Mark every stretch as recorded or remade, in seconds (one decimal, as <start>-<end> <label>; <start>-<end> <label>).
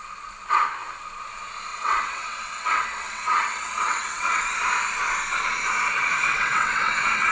0.0-1.7 recorded; 1.7-4.4 remade; 4.4-6.3 recorded; 6.3-7.3 remade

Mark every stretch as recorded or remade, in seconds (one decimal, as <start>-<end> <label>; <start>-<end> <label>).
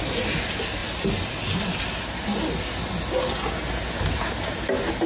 0.0-5.1 recorded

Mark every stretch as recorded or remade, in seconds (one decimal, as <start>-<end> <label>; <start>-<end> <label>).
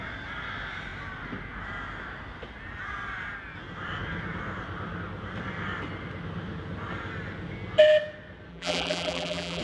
0.0-8.5 recorded; 8.5-9.6 remade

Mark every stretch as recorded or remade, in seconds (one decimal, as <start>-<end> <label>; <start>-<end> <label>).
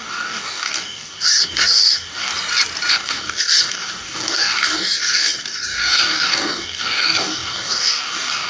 0.0-2.3 remade; 2.3-2.9 recorded; 2.9-8.5 remade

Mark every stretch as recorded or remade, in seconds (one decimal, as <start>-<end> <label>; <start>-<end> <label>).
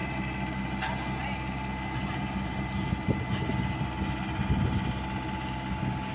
0.0-6.1 recorded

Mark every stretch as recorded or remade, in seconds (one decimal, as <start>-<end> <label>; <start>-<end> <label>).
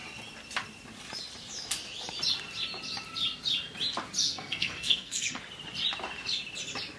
0.0-4.2 recorded; 4.2-5.4 remade; 5.4-7.0 recorded